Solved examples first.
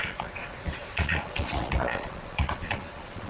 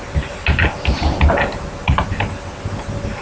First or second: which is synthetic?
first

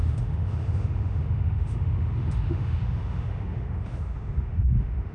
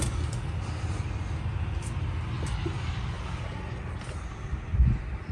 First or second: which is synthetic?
first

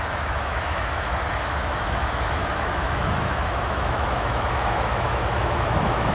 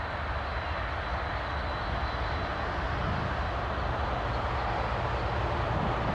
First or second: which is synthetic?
first